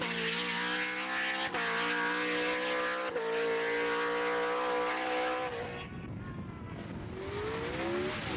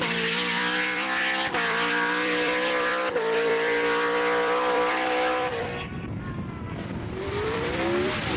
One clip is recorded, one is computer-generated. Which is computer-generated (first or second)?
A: second